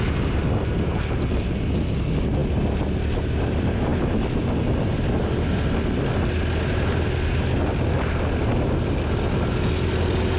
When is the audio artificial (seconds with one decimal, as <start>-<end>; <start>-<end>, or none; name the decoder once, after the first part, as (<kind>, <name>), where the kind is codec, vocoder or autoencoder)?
none

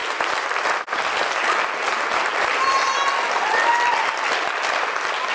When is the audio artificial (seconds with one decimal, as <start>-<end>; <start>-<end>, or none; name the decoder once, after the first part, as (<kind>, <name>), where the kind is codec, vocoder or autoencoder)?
none